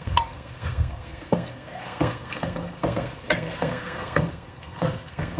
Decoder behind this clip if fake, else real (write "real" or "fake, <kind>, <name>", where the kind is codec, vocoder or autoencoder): fake, codec, SNAC